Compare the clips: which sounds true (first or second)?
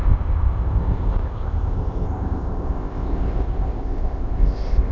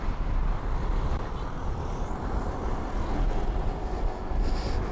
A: second